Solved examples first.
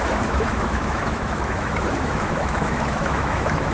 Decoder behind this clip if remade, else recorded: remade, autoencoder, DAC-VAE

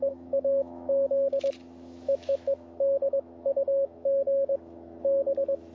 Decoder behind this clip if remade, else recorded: remade, autoencoder, DAC-VAE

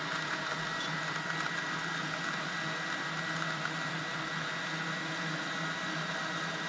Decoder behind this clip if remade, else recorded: recorded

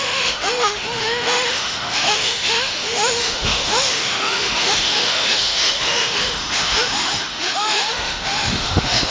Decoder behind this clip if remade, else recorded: remade, autoencoder, DAC-VAE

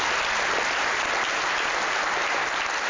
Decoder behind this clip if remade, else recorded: recorded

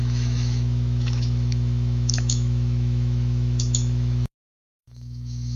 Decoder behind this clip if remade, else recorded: remade, autoencoder, DAC-VAE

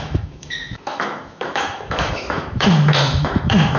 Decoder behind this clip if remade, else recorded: remade, autoencoder, DAC-VAE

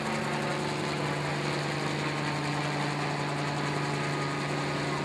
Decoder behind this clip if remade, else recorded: recorded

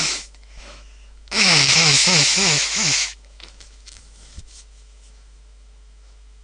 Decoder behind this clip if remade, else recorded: remade, autoencoder, DAC-VAE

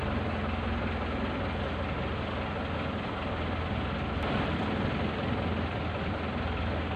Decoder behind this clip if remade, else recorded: recorded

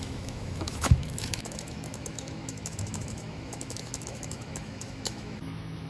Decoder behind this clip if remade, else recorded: remade, autoencoder, DAC-VAE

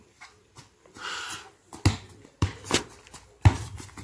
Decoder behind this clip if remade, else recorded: recorded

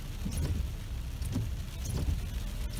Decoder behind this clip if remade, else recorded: recorded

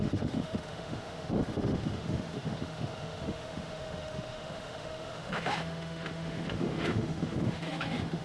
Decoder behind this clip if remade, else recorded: remade, autoencoder, DAC-VAE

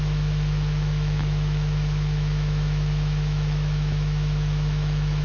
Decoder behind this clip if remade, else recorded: remade, autoencoder, DAC-VAE